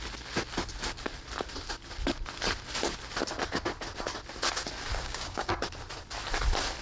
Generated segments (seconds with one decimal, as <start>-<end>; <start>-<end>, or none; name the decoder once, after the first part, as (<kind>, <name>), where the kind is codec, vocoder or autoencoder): 4.9-5.5 (codec, DAC)